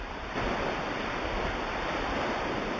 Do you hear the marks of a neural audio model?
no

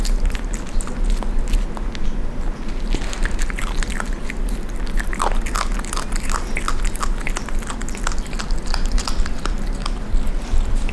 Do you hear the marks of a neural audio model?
no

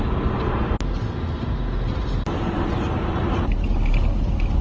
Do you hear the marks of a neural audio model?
no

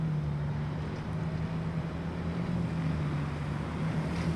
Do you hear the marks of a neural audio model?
no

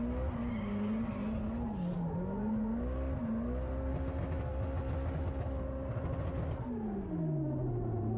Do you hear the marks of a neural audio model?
no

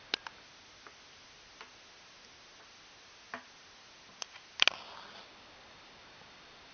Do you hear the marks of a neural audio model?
no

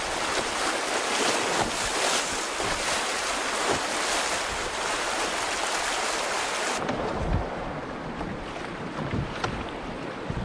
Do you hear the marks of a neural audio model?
no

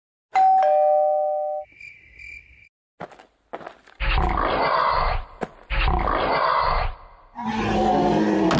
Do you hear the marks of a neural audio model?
no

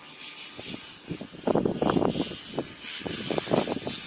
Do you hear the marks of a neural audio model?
no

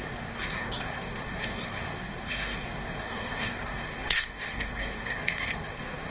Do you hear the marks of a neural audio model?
yes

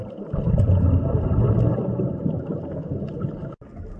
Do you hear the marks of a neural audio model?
no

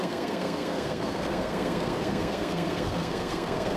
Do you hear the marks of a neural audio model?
yes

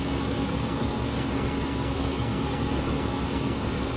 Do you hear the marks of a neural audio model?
yes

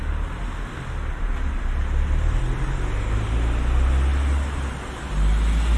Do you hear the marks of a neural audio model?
no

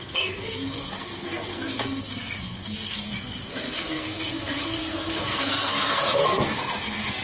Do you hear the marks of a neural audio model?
yes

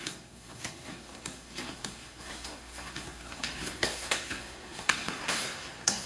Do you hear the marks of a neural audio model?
yes